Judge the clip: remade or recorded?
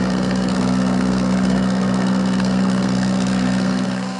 remade